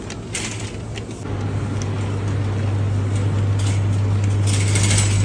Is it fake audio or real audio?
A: real